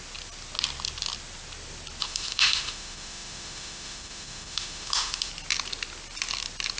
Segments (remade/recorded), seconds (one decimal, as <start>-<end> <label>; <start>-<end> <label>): 0.0-2.0 recorded; 2.0-5.3 remade; 5.3-6.8 recorded